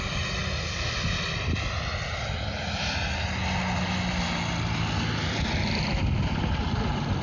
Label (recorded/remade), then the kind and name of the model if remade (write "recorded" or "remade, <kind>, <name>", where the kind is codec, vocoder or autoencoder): recorded